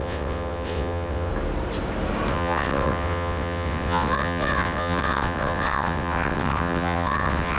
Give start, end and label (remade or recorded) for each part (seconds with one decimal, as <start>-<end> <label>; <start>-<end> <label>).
0.0-1.3 remade; 1.3-2.3 recorded; 2.3-7.6 remade